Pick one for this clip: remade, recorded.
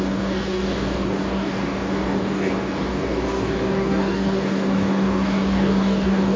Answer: remade